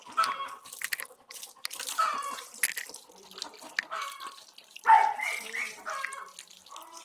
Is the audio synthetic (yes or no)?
no